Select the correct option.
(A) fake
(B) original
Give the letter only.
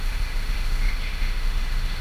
A